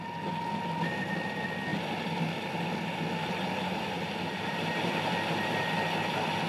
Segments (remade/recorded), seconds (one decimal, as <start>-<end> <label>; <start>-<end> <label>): 0.0-1.7 recorded; 1.7-5.5 remade; 5.5-6.5 recorded